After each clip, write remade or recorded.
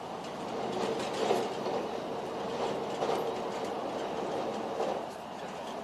recorded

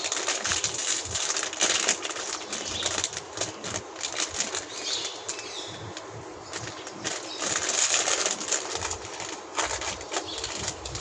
recorded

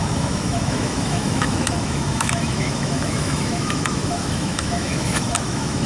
remade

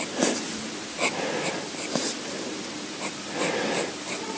recorded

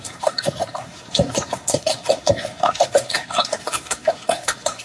remade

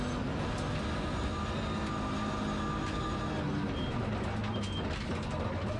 recorded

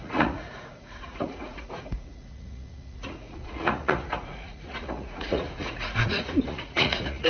remade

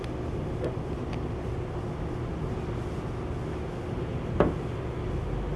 recorded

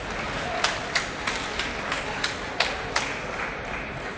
recorded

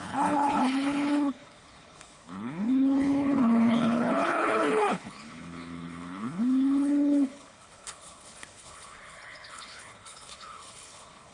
remade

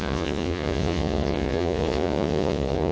remade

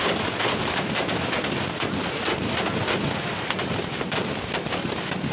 recorded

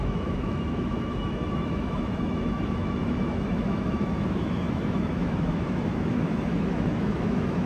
remade